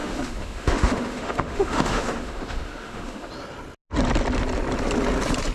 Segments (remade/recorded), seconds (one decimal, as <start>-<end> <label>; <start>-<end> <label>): 0.0-3.3 remade; 3.3-5.5 recorded